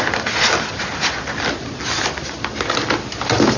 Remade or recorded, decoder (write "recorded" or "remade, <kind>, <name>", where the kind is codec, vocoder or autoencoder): recorded